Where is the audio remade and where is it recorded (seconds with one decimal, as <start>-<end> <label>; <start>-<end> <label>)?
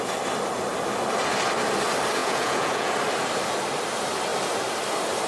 0.0-2.2 recorded; 2.2-2.9 remade; 2.9-5.3 recorded